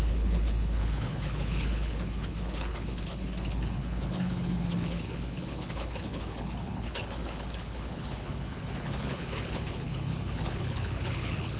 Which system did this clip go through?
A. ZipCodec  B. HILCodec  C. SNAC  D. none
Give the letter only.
B